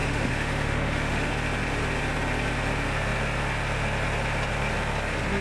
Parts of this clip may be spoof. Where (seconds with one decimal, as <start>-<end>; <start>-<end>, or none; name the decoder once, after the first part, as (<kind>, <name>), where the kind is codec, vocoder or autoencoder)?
0.0-1.3 (autoencoder, DAC-VAE)